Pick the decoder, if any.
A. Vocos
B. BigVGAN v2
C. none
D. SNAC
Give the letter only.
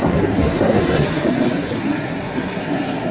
D